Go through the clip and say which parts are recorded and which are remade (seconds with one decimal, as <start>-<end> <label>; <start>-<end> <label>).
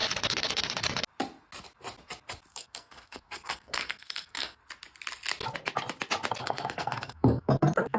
0.0-2.5 recorded; 2.5-4.6 remade; 4.6-6.4 recorded; 6.4-8.0 remade